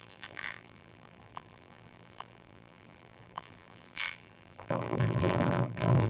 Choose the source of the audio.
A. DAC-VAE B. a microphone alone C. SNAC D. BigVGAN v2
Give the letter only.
D